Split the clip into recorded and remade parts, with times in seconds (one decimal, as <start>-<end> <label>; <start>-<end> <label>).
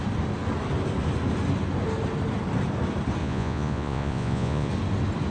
0.0-3.2 recorded; 3.2-4.7 remade; 4.7-5.3 recorded